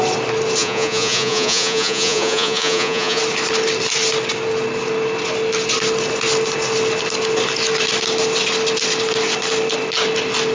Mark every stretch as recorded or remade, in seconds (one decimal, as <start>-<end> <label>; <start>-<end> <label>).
0.0-0.6 recorded; 0.6-3.2 remade; 3.2-10.5 recorded

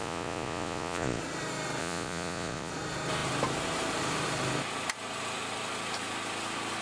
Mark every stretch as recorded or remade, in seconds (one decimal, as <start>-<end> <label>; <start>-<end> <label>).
0.0-1.2 remade; 1.2-1.8 recorded; 1.8-2.7 remade; 2.7-6.8 recorded

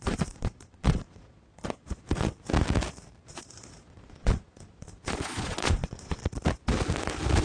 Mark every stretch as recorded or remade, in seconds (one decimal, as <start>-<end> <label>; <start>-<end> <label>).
0.0-2.3 remade; 2.3-3.2 recorded; 3.2-6.2 remade; 6.2-7.4 recorded

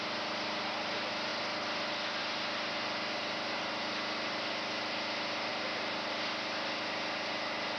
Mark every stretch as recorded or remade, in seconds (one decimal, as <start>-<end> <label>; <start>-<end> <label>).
0.0-7.8 recorded

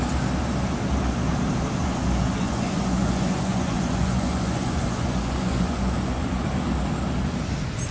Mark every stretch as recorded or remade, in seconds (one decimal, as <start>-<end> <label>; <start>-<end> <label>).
0.0-1.8 recorded; 1.8-6.5 remade; 6.5-7.9 recorded

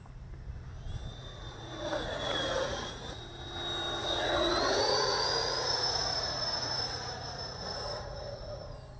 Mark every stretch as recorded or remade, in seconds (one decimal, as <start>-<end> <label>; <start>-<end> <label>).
0.0-1.1 recorded; 1.1-3.2 remade; 3.2-4.0 recorded; 4.0-8.6 remade; 8.6-9.0 recorded